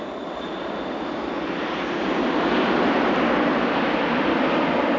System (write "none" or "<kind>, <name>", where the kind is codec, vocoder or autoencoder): none